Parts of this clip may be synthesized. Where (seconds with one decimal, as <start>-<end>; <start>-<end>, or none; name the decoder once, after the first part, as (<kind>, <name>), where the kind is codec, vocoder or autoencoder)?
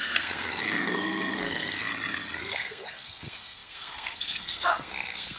0.0-1.9 (codec, SNAC); 2.4-5.4